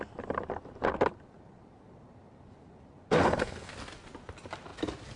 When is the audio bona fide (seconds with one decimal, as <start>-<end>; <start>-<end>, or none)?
0.0-3.1; 3.7-5.2